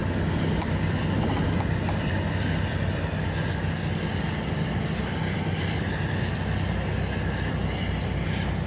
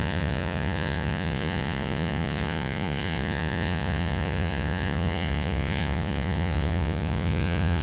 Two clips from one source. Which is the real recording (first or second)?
first